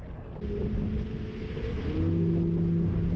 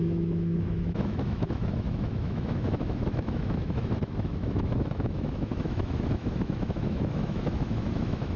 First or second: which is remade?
second